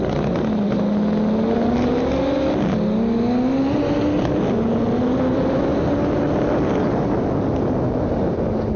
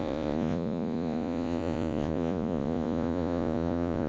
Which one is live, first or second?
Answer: first